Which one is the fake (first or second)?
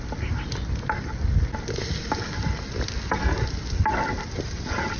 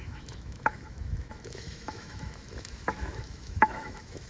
second